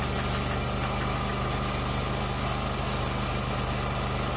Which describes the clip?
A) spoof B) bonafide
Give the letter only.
B